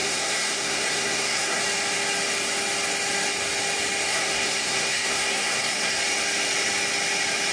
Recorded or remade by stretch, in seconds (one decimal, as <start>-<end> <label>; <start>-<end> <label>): 0.0-1.6 remade; 1.6-4.1 recorded; 4.1-6.0 remade; 6.0-7.5 recorded